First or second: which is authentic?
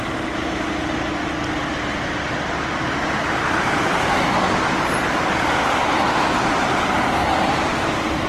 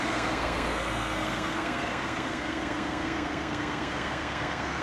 first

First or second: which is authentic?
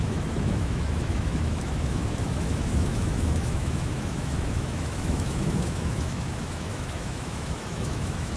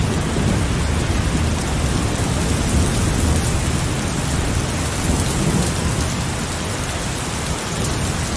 second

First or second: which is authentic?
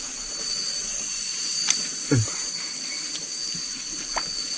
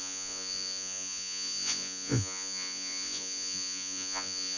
first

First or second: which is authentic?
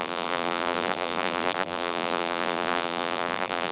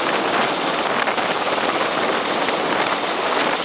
second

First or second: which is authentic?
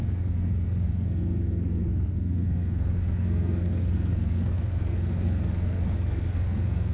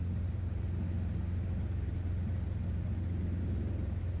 second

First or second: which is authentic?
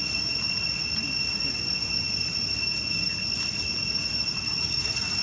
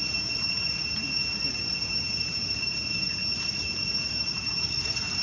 first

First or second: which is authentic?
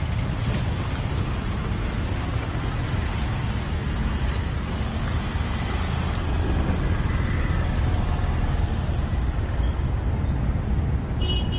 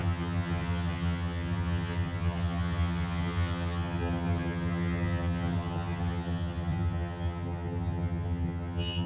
first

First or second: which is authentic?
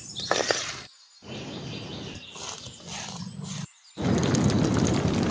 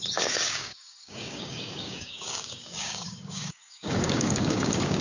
first